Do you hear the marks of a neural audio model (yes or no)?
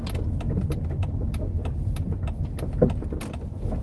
no